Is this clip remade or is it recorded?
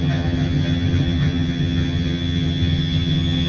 remade